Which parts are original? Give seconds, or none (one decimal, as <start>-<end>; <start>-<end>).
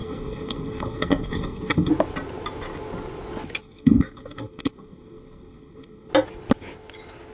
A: 1.9-3.6; 6.1-7.3